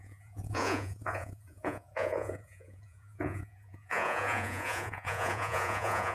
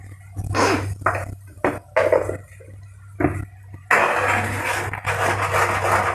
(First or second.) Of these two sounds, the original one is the second